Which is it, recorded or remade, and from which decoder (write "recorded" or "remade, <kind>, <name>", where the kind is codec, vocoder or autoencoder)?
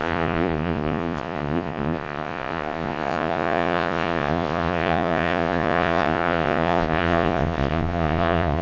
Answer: remade, vocoder, Vocos